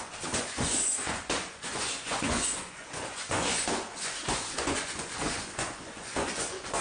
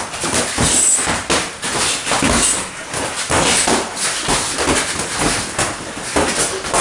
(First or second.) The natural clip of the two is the second